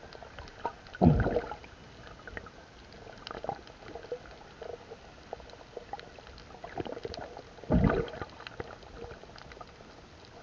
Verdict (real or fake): real